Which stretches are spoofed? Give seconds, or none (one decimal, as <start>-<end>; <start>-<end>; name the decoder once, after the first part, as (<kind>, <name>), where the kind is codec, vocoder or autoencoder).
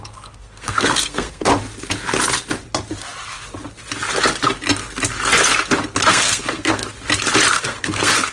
0.0-1.5 (codec, SNAC); 6.1-6.8; 7.5-8.3